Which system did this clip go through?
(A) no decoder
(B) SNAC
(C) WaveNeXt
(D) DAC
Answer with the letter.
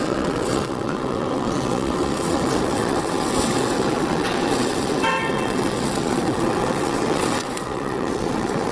C